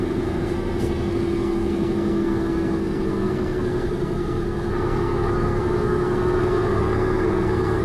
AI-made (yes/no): yes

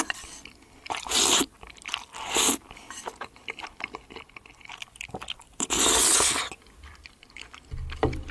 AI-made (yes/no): no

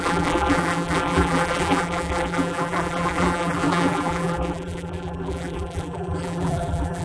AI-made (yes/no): yes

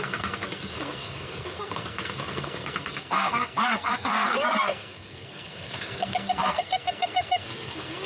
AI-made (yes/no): yes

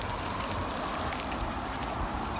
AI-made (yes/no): no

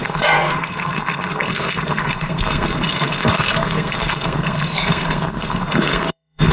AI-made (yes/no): yes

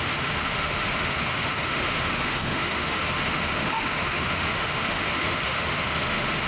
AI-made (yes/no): yes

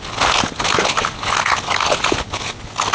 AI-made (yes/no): no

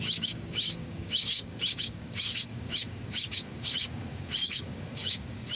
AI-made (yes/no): yes